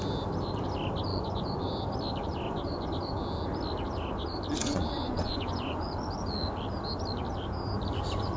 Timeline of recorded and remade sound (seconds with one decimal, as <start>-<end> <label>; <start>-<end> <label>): 0.0-1.1 recorded; 1.1-1.7 remade; 1.7-4.6 recorded; 4.6-5.9 remade; 5.9-8.4 recorded